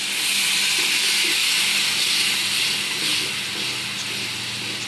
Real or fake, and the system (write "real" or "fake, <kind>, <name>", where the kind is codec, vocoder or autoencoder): real